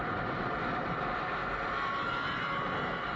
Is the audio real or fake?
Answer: real